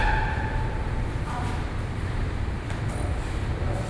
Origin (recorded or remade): remade